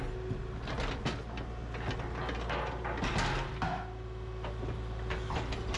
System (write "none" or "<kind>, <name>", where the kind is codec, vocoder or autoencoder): none